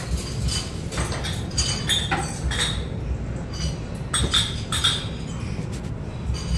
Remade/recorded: recorded